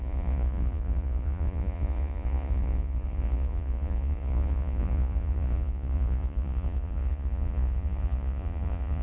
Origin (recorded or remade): remade